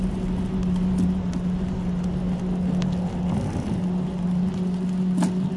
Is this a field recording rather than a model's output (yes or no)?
yes